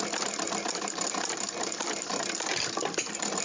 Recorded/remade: remade